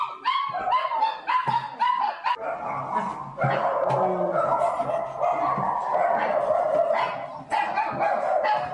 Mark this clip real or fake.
real